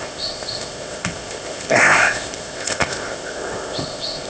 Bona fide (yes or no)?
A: no